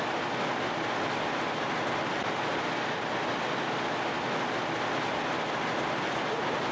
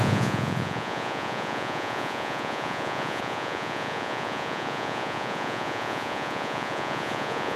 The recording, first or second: first